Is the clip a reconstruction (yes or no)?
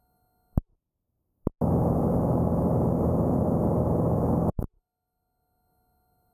no